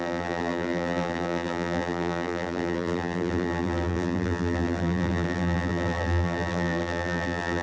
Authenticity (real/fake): fake